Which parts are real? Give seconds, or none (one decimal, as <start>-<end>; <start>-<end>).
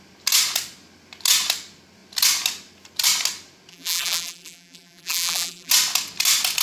0.0-3.7; 5.7-6.6